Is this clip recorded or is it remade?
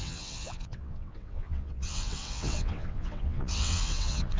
remade